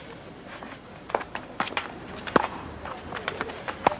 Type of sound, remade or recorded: remade